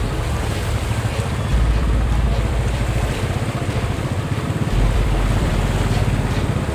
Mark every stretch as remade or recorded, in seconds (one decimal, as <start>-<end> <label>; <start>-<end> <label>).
0.0-1.5 recorded; 1.5-5.5 remade; 5.5-6.7 recorded